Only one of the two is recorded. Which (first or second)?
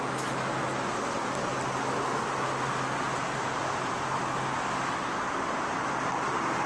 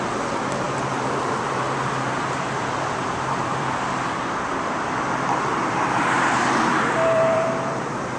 first